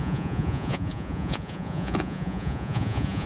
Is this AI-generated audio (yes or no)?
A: yes